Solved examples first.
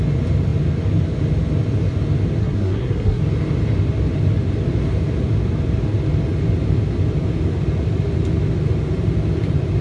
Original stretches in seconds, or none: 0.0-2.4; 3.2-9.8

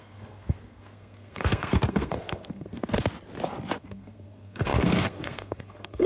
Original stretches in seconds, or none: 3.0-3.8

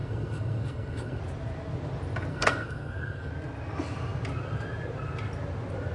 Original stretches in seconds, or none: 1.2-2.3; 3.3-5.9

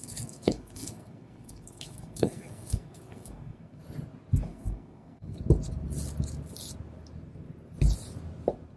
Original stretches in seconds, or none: 3.8-4.5; 5.4-8.8

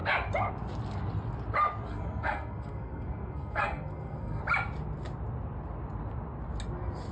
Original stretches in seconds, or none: 0.0-1.9; 4.4-7.1